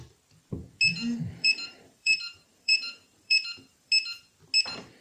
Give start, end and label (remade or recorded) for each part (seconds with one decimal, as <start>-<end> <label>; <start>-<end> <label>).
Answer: 0.0-0.9 recorded; 0.9-3.9 remade; 3.9-5.0 recorded